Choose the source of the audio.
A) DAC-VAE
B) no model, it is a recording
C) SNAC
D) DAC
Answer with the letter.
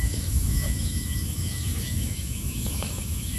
A